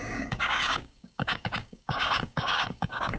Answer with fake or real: fake